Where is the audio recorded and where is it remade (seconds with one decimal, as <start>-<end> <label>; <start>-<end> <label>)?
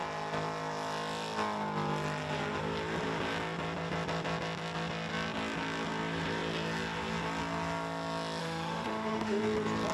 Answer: 0.0-8.4 recorded; 8.4-9.4 remade; 9.4-9.9 recorded